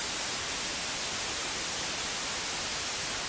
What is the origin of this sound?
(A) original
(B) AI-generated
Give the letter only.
A